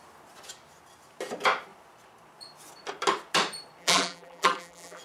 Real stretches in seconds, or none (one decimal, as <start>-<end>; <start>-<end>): 0.0-3.8